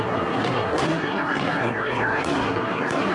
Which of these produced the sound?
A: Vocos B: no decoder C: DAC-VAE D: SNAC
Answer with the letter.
D